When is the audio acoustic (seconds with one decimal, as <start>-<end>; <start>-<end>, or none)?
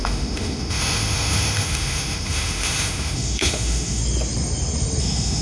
4.0-5.0